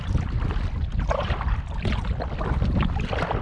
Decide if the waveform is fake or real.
real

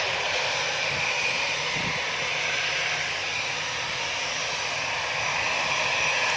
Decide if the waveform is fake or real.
real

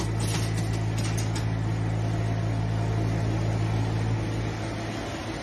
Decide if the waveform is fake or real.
real